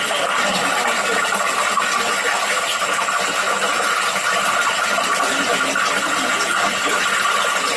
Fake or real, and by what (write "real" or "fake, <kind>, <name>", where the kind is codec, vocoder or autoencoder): real